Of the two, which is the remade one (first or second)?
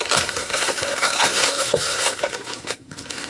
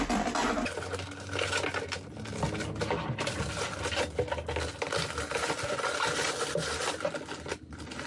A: first